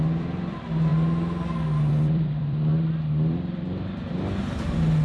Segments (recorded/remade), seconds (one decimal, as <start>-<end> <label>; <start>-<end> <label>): 0.0-0.9 remade; 0.9-1.9 recorded; 1.9-5.0 remade